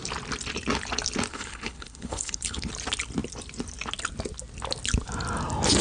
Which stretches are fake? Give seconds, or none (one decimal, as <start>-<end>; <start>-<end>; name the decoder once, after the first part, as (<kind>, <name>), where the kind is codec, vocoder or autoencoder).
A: 1.3-2.7 (codec, HILCodec)